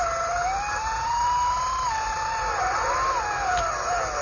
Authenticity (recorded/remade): recorded